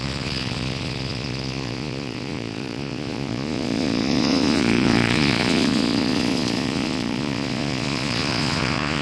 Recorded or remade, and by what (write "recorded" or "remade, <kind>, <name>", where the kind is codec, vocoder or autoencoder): remade, vocoder, Vocos